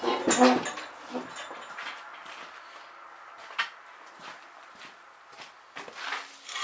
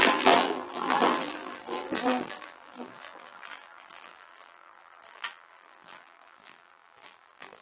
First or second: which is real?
first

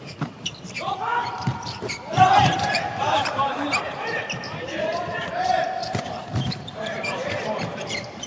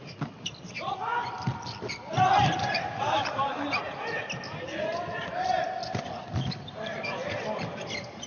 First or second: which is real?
second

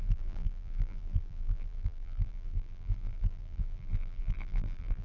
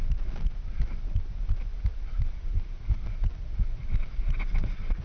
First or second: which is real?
second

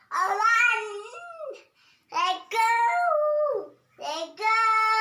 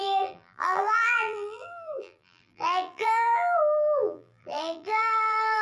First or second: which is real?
first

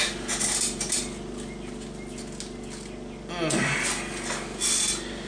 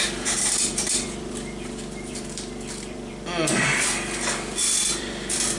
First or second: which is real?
first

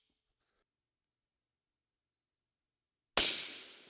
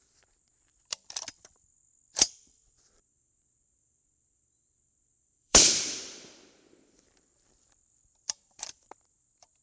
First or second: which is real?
first